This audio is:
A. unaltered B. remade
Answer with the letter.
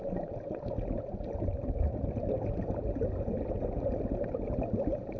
A